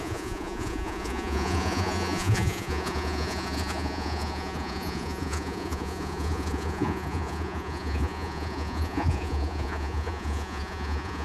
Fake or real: fake